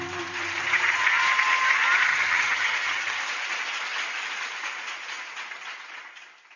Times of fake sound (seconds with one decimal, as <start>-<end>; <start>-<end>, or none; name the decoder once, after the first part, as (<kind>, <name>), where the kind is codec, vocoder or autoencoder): 2.1-3.2 (vocoder, HiFi-GAN)